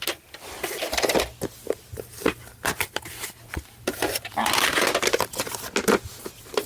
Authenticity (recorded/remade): recorded